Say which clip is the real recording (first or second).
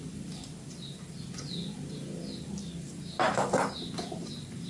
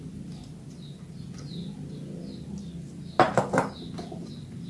second